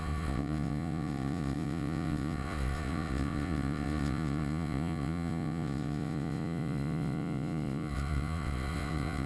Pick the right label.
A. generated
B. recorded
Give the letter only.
A